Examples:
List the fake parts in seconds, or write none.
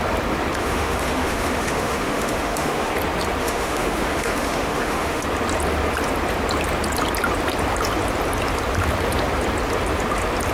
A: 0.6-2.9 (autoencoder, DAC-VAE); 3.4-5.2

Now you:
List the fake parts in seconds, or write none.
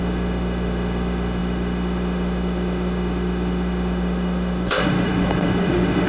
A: 0.0-6.1 (autoencoder, DAC-VAE)